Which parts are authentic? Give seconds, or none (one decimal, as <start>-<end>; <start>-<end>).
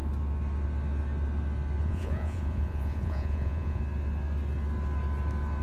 0.0-1.8; 3.8-5.6